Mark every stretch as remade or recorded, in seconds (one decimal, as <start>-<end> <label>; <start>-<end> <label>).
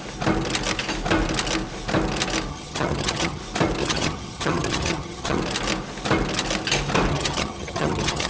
0.0-2.5 recorded; 2.5-3.4 remade; 3.4-3.8 recorded; 3.8-5.4 remade; 5.4-7.1 recorded; 7.1-8.3 remade